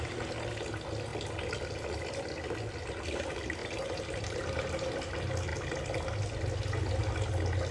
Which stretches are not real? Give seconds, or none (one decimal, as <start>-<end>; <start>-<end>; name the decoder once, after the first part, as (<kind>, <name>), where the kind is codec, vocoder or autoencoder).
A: 3.6-4.9 (vocoder, BigVGAN v2)